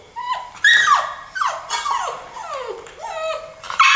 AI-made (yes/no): no